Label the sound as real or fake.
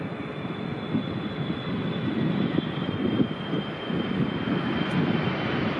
real